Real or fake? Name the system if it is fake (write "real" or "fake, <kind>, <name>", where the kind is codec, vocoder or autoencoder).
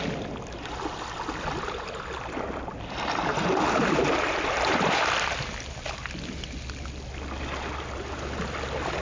real